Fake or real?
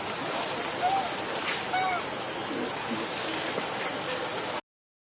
real